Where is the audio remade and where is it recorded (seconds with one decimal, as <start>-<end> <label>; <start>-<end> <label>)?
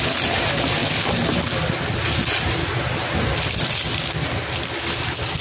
0.0-5.4 recorded